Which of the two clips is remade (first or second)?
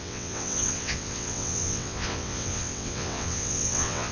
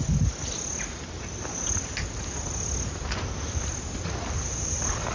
first